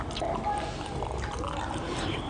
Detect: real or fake real